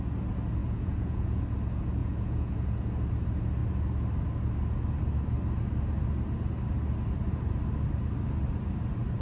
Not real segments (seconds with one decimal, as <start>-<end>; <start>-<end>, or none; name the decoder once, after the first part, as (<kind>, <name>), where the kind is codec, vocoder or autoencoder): 0.6-1.4 (vocoder, Vocos); 2.0-2.9